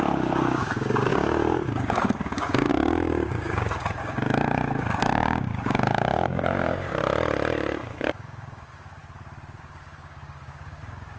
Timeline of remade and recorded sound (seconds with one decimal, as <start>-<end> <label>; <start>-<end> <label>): 0.0-7.0 remade; 7.0-7.7 recorded; 7.7-9.0 remade; 9.0-9.6 recorded; 9.6-11.2 remade